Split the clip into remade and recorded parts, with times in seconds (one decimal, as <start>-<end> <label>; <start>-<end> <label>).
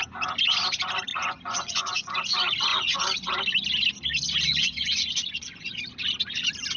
0.0-1.1 recorded; 1.1-2.1 remade; 2.1-2.7 recorded; 2.7-3.3 remade; 3.3-4.6 recorded; 4.6-5.8 remade; 5.8-6.8 recorded